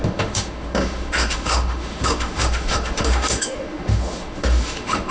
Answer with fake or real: fake